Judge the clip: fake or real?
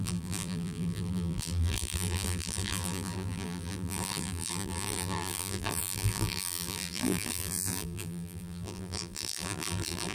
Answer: fake